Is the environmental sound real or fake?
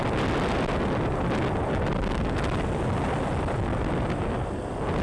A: real